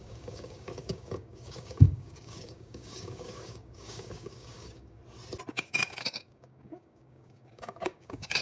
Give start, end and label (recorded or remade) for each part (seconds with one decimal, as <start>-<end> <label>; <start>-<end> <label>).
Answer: 0.0-5.0 remade; 5.0-5.5 recorded; 5.5-8.4 remade